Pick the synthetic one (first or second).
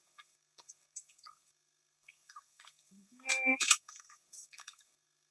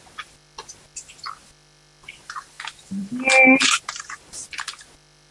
first